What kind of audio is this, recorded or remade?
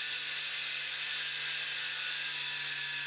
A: recorded